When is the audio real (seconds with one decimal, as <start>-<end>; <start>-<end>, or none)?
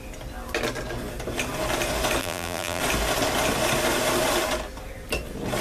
0.0-2.2; 2.8-5.6